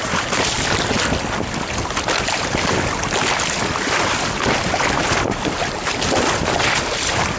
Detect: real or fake real